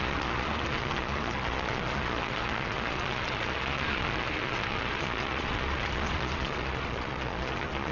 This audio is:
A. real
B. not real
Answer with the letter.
B